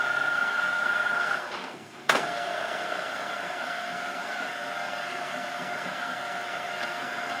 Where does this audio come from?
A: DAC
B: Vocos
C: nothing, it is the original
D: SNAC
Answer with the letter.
D